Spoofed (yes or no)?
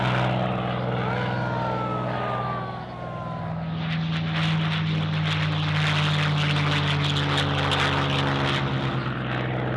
no